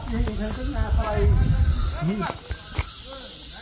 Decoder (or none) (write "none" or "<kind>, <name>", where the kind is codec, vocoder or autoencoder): none